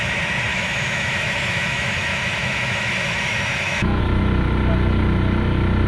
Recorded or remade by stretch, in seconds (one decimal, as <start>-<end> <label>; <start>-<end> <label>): 0.0-0.5 recorded; 0.5-4.0 remade; 4.0-5.9 recorded